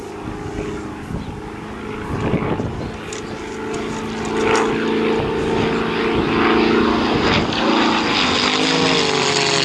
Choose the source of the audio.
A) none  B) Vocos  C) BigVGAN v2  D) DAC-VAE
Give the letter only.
A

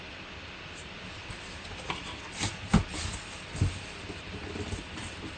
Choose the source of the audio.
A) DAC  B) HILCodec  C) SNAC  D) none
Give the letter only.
D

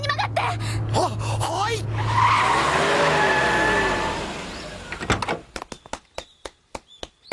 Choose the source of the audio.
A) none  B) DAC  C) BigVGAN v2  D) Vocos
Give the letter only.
A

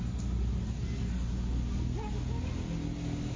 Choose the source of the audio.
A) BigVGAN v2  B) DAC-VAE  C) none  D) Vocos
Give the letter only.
C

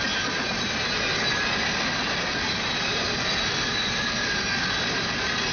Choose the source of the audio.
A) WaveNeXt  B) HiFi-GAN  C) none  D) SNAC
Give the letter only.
C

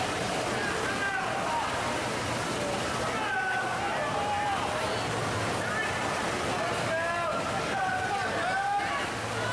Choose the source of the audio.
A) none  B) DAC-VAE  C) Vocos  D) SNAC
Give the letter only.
A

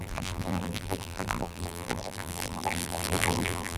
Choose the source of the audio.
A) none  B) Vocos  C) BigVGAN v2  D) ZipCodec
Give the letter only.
C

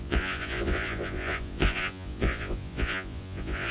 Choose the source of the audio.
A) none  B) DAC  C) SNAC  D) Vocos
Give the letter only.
D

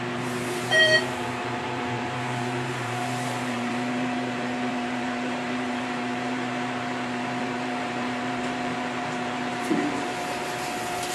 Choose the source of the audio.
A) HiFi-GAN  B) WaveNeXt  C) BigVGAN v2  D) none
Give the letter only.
C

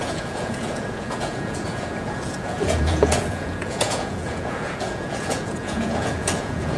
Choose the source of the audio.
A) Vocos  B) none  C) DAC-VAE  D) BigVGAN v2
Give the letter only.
A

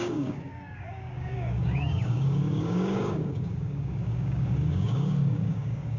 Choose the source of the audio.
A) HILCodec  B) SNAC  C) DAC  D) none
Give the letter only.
C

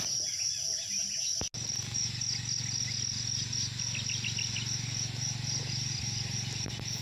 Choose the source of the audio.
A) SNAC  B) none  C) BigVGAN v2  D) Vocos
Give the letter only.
B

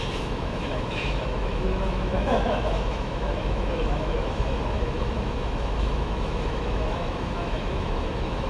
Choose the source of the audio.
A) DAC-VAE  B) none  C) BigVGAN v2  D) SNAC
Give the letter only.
A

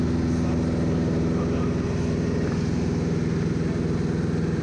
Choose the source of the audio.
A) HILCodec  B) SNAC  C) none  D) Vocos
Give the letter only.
C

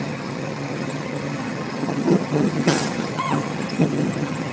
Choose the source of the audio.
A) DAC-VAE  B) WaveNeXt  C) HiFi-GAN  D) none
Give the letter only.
C